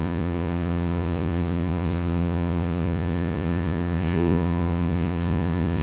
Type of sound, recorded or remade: remade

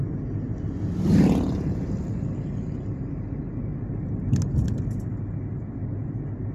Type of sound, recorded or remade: recorded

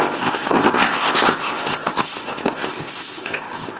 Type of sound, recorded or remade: remade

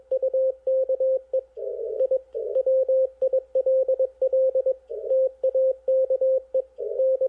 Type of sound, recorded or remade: recorded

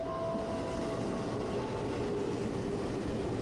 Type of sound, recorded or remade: recorded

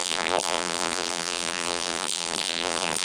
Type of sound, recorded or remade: remade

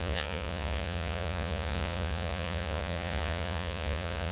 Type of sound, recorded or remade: remade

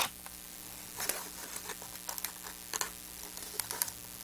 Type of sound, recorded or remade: recorded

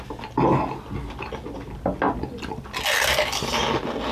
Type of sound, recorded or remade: recorded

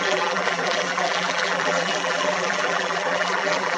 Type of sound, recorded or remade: remade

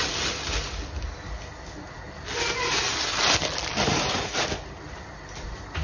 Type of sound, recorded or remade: recorded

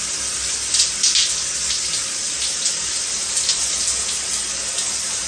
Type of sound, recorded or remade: recorded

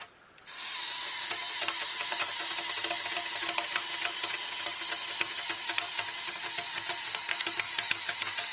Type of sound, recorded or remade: recorded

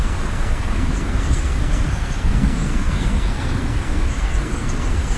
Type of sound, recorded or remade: remade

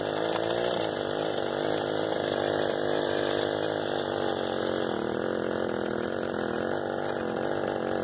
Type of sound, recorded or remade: recorded